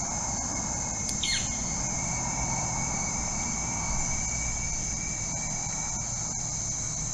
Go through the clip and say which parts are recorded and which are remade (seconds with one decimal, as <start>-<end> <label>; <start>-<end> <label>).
0.0-7.1 recorded